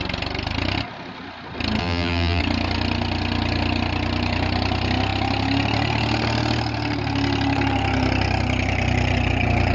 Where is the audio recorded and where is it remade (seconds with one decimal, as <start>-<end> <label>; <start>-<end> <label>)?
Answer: 0.0-1.8 recorded; 1.8-2.4 remade; 2.4-9.7 recorded